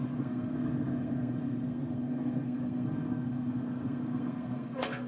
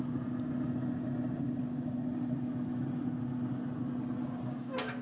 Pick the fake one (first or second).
first